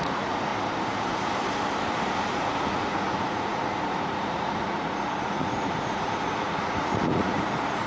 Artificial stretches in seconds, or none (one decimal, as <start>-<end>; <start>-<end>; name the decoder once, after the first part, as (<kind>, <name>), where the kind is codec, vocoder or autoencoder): 0.0-0.5 (vocoder, Vocos); 2.3-7.9